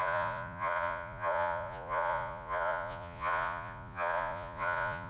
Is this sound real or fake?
fake